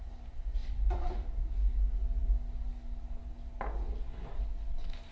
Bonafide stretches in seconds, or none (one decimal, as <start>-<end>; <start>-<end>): 0.0-0.6; 1.5-5.1